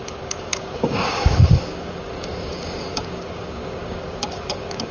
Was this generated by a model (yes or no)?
yes